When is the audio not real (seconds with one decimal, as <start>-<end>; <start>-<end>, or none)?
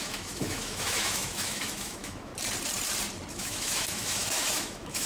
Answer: 0.0-2.3; 3.3-5.1